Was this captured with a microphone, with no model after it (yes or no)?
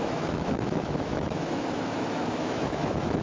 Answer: no